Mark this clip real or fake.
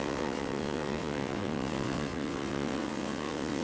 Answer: fake